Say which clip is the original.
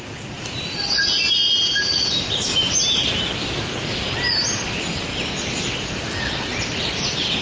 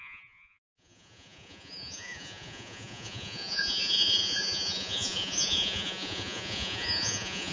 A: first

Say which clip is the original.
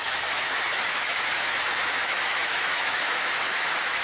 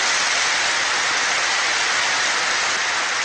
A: second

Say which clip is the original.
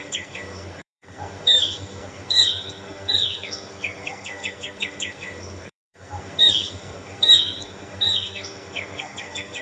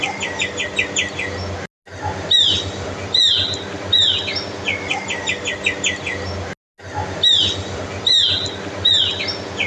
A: second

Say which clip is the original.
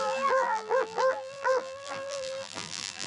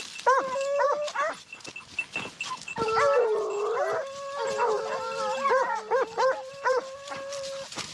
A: second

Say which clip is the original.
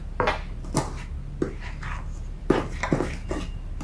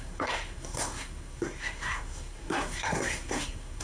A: first